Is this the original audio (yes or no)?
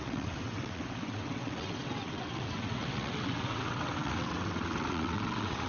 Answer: no